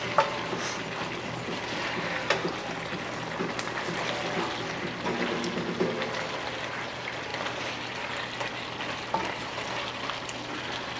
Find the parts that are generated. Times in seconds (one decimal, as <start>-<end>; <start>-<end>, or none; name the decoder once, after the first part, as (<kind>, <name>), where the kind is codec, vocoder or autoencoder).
none